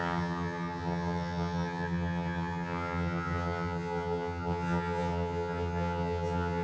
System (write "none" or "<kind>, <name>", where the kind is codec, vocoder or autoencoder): vocoder, HiFi-GAN